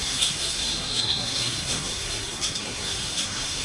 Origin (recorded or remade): remade